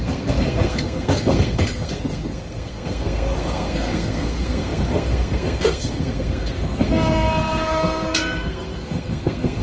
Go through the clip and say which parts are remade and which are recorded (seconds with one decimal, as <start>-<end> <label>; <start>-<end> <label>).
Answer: 0.0-9.6 remade

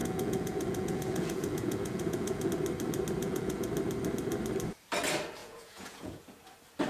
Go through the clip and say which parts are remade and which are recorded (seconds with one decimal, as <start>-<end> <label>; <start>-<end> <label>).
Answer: 0.0-2.5 remade; 2.5-3.2 recorded; 3.2-3.7 remade; 3.7-5.4 recorded; 5.4-6.2 remade; 6.2-6.9 recorded

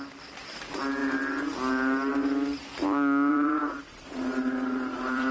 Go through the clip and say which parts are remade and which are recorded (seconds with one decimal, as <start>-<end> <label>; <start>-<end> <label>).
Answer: 0.0-3.3 recorded; 3.3-5.3 remade

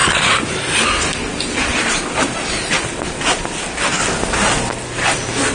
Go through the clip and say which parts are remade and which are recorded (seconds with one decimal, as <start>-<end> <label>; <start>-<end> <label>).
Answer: 0.0-5.5 recorded

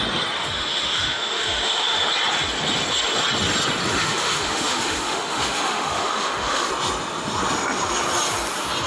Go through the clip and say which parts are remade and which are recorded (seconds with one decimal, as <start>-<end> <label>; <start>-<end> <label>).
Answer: 0.0-0.4 recorded; 0.4-2.1 remade; 2.1-4.0 recorded; 4.0-6.7 remade; 6.7-8.9 recorded